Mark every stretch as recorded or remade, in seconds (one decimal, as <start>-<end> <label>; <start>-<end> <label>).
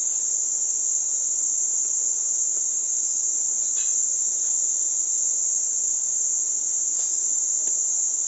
0.0-0.4 recorded; 0.4-1.5 remade; 1.5-8.3 recorded